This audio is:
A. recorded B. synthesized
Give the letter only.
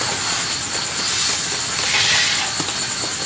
A